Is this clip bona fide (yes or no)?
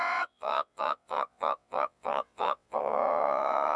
no